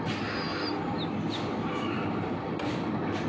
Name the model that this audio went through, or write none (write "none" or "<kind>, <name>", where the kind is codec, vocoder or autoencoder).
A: none